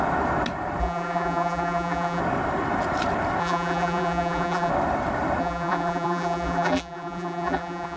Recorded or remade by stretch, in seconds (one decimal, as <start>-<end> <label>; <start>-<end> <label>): 0.0-0.8 recorded; 0.8-2.2 remade; 2.2-3.4 recorded; 3.4-4.7 remade; 4.7-5.4 recorded; 5.4-8.0 remade